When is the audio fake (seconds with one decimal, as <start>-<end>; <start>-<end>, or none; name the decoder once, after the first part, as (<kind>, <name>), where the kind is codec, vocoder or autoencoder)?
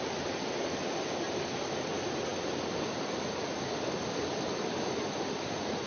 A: none